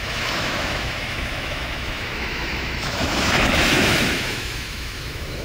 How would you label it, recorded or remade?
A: remade